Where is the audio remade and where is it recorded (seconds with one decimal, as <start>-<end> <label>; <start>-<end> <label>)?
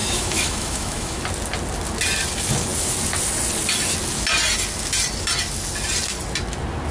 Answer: 0.0-1.2 remade; 1.2-6.9 recorded